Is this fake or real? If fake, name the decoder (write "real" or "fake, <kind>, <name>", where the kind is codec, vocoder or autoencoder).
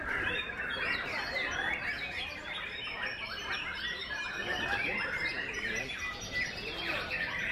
fake, vocoder, BigVGAN v2